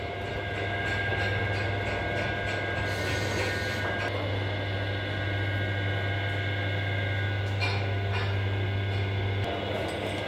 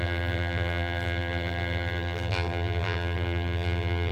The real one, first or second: first